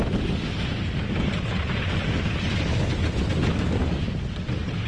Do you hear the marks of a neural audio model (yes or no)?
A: no